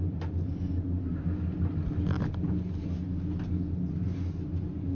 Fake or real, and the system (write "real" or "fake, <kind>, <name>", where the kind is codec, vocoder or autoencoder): real